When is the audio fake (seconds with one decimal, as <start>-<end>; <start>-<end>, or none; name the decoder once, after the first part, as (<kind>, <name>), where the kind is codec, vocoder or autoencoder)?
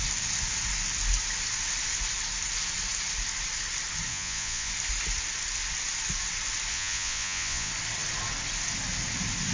4.1-4.7 (vocoder, Vocos); 6.7-7.7